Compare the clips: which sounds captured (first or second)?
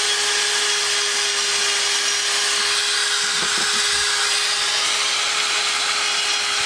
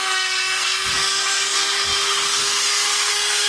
first